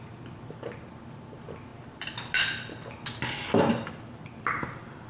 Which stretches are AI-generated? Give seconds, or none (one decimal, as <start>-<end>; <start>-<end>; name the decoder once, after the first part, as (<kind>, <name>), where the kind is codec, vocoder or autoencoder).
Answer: none